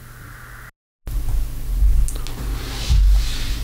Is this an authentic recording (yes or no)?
yes